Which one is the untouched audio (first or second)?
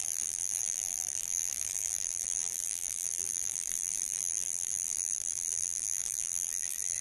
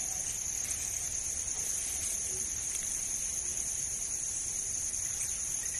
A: second